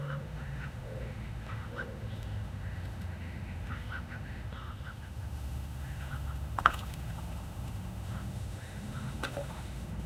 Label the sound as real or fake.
fake